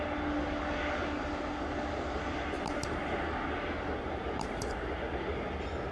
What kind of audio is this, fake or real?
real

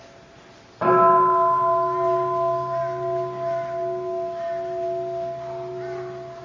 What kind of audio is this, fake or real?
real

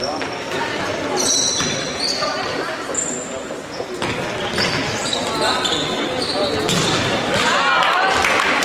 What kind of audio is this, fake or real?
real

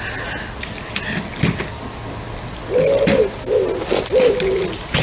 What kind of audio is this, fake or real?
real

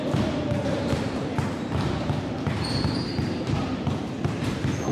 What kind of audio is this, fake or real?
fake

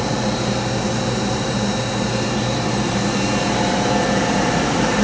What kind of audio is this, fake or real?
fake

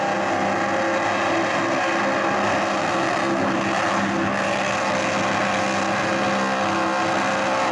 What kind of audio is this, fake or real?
real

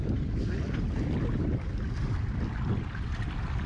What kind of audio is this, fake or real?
real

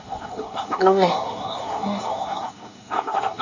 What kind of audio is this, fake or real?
fake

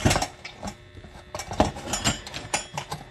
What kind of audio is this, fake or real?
fake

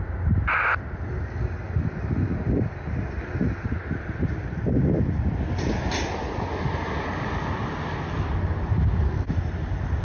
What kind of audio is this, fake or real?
real